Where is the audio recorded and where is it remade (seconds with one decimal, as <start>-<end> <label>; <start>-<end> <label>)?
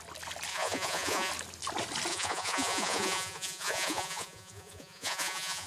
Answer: 0.0-0.5 recorded; 0.5-1.3 remade; 1.3-2.1 recorded; 2.1-5.7 remade